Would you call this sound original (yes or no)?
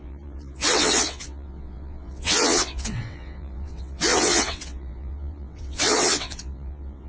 no